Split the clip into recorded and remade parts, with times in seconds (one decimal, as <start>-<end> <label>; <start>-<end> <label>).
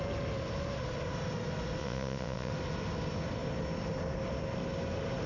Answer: 0.0-1.8 recorded; 1.8-2.5 remade; 2.5-5.3 recorded